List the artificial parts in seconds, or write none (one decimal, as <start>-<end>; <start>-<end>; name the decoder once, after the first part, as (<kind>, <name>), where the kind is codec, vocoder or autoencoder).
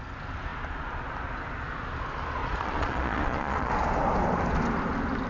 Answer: 2.4-3.7 (vocoder, Vocos)